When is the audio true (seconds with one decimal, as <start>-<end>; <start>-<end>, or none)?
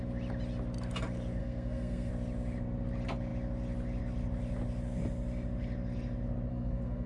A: 0.0-1.4; 2.1-6.5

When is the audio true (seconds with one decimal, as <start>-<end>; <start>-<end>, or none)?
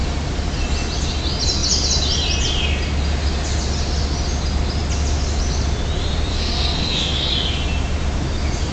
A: 0.0-6.3; 7.3-8.7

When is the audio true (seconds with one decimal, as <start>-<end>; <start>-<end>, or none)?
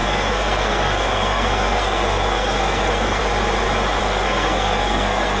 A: 3.2-4.0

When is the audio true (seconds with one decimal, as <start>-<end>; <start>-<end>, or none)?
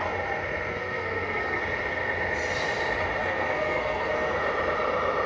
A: 0.0-0.7; 1.6-3.2; 4.4-5.3